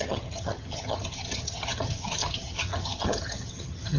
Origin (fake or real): fake